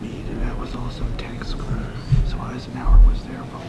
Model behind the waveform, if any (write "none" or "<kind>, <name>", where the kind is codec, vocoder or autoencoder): none